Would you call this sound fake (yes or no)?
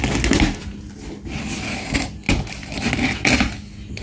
no